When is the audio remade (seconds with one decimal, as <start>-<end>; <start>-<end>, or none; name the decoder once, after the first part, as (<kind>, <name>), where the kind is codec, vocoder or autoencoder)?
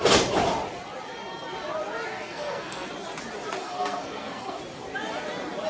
2.1-2.9 (codec, SNAC); 3.6-4.6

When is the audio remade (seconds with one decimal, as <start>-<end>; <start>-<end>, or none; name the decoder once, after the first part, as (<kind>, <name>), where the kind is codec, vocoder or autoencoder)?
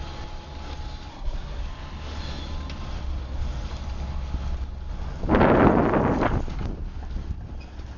1.1-1.6 (codec, SNAC)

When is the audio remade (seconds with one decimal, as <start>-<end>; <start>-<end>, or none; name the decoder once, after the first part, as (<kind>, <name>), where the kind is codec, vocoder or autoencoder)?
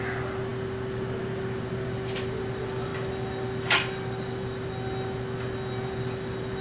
none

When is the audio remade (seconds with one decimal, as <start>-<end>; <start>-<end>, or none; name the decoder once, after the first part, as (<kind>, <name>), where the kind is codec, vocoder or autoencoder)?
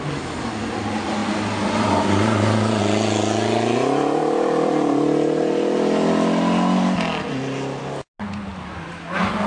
none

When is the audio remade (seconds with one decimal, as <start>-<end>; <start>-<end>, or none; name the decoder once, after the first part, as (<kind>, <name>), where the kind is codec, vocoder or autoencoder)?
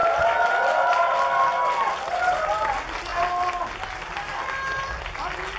none